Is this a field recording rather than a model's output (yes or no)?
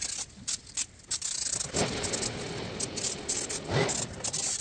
yes